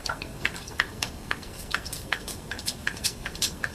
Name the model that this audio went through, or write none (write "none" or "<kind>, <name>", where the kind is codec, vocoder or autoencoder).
codec, SNAC